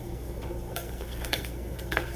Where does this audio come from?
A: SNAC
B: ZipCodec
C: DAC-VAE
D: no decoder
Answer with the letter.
A